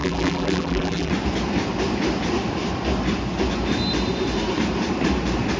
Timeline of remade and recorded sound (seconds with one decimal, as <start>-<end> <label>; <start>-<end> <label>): 0.0-1.1 remade; 1.1-5.6 recorded